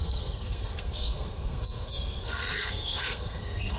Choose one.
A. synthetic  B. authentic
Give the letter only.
A